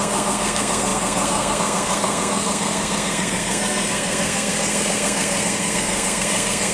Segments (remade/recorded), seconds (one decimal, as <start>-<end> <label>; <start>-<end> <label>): 0.0-6.7 remade